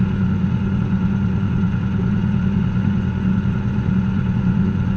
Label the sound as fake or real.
fake